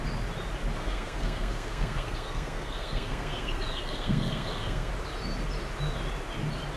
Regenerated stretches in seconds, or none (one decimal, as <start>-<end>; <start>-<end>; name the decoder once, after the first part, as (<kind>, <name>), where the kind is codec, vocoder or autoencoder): 0.8-4.9 (codec, SNAC)